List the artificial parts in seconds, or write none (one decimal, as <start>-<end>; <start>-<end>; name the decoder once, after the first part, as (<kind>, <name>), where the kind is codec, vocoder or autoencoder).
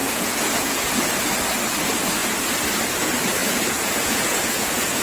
0.0-0.9 (vocoder, Vocos); 3.4-5.0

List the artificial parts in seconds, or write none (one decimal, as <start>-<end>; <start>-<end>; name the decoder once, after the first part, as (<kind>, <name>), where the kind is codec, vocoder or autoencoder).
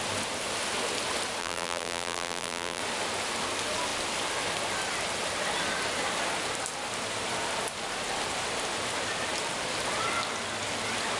1.4-2.8 (vocoder, BigVGAN v2)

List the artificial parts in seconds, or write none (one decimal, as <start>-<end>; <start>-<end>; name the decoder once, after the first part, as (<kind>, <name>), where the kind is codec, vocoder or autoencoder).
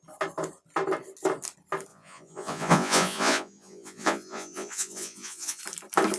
1.9-5.6 (vocoder, Vocos)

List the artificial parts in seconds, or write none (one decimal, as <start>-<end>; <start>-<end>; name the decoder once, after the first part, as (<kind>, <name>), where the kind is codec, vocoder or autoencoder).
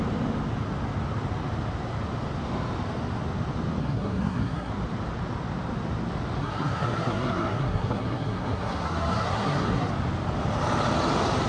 3.8-4.7 (codec, SNAC); 6.4-9.9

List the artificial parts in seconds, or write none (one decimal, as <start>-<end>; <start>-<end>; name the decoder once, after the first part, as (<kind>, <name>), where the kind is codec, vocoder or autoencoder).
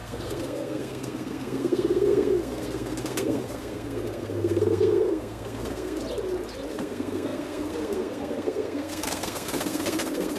0.0-6.0 (codec, SNAC); 6.7-10.4